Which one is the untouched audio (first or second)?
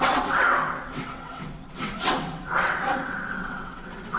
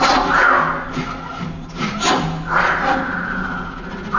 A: second